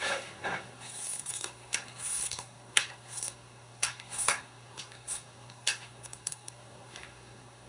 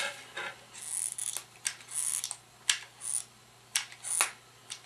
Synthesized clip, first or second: first